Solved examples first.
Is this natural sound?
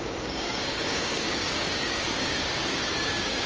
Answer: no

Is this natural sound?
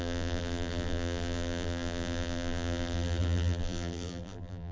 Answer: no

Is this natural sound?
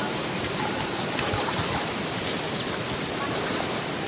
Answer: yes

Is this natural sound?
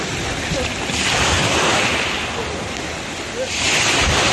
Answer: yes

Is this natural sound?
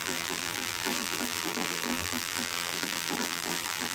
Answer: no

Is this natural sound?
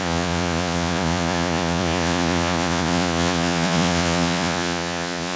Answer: no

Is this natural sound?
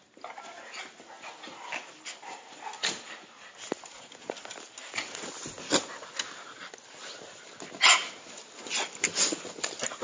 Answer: yes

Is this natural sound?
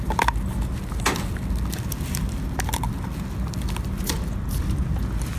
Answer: yes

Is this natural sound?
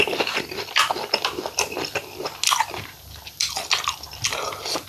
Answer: yes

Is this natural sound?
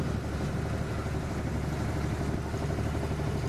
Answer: yes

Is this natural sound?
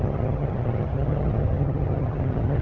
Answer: no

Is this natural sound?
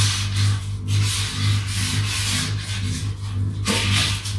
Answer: yes